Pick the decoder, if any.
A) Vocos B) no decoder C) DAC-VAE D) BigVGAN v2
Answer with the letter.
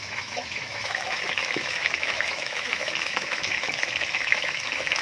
C